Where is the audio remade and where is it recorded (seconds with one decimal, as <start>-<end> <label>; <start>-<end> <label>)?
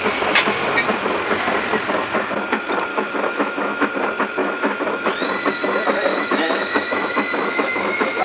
0.0-2.9 recorded; 2.9-3.9 remade; 3.9-4.4 recorded; 4.4-5.1 remade; 5.1-6.1 recorded; 6.1-8.2 remade